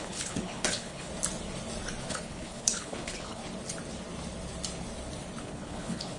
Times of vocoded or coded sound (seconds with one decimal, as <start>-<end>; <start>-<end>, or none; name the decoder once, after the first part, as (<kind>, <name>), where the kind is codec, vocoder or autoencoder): 0.0-1.1 (codec, HILCodec); 2.1-3.4; 5.4-6.2